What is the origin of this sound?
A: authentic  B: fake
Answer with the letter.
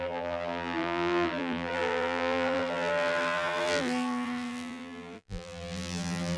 B